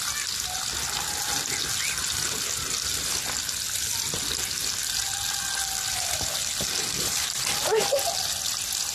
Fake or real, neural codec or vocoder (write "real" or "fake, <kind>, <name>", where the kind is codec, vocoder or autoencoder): real